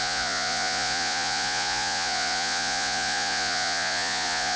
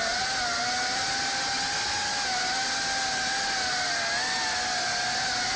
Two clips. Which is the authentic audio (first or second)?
second